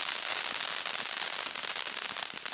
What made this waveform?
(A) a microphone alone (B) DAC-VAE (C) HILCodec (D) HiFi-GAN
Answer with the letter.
A